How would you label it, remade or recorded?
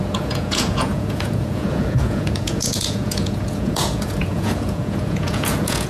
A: remade